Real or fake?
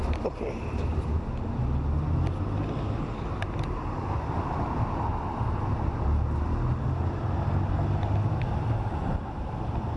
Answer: real